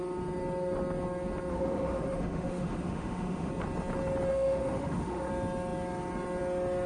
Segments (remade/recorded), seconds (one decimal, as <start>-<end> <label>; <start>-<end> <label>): 0.0-1.5 recorded; 1.5-3.5 remade; 3.5-4.3 recorded; 4.3-5.3 remade; 5.3-6.9 recorded